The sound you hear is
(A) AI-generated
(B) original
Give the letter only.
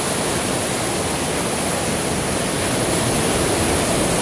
B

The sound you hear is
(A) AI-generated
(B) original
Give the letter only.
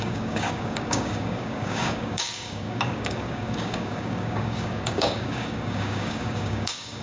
A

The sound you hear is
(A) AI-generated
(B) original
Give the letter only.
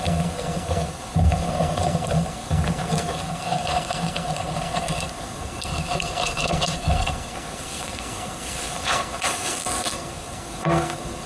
A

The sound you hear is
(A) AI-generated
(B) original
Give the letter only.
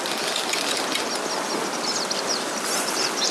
B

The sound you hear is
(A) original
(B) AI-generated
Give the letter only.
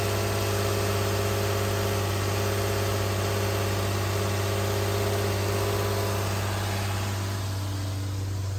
A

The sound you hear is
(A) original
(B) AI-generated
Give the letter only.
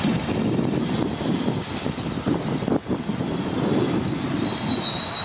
A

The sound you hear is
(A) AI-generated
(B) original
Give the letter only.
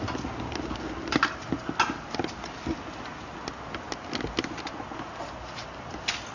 B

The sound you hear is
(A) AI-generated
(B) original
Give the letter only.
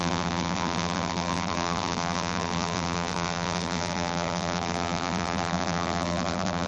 A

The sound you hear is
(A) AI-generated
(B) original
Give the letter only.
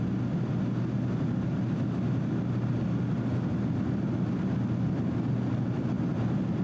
B